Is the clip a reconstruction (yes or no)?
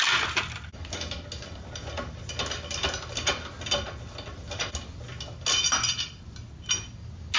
no